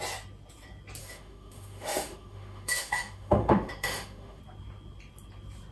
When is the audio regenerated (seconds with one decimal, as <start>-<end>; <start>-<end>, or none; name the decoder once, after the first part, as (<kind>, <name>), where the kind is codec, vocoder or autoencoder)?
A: 1.0-4.4 (autoencoder, DAC-VAE)